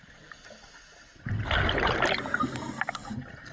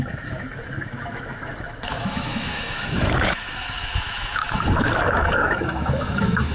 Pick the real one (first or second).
first